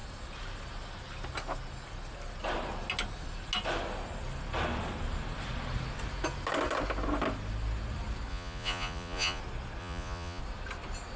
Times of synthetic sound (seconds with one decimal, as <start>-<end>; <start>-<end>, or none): 8.3-9.4; 9.8-10.4